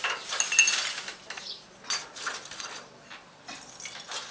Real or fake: real